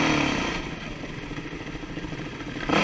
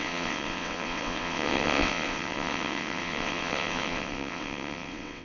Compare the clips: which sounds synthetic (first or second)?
second